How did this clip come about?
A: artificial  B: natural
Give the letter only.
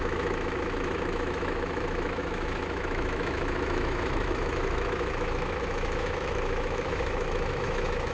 A